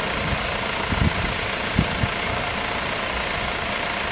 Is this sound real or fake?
fake